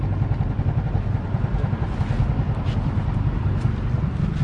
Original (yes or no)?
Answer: yes